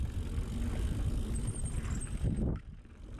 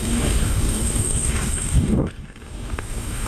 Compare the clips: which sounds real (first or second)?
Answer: first